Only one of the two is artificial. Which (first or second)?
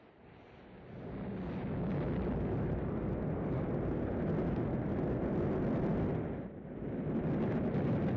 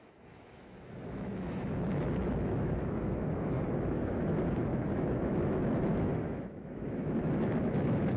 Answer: second